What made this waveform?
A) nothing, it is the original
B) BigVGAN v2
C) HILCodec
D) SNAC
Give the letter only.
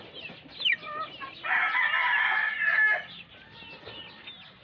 A